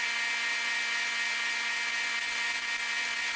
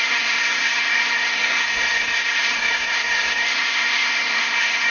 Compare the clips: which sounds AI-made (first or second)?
second